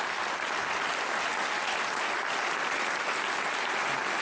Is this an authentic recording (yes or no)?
yes